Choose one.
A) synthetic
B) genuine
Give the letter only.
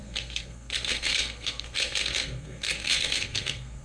A